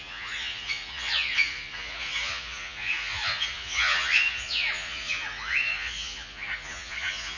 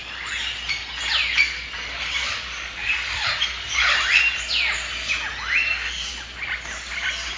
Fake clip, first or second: first